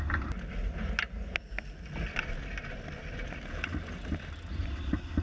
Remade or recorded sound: recorded